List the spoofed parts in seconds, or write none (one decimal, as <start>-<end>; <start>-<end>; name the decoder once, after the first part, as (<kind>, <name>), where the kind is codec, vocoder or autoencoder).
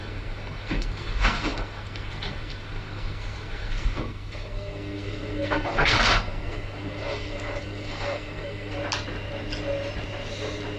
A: 0.0-8.8 (codec, SNAC)